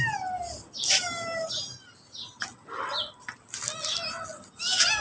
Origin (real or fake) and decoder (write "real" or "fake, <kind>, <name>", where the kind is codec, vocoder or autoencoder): real